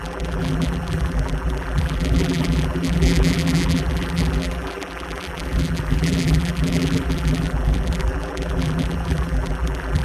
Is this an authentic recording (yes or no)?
no